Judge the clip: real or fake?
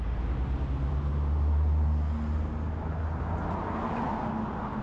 real